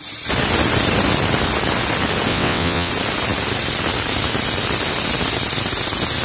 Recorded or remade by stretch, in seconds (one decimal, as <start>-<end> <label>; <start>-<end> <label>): 0.0-2.3 recorded; 2.3-2.9 remade; 2.9-6.2 recorded